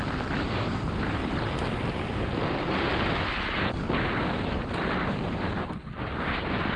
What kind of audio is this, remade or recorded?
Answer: recorded